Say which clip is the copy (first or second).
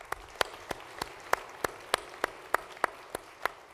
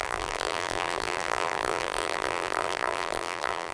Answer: second